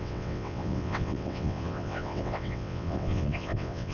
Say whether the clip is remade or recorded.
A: remade